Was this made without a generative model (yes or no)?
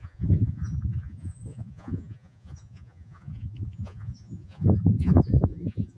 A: no